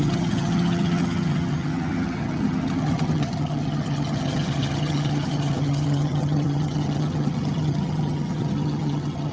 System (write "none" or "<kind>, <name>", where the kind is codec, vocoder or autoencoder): vocoder, HiFi-GAN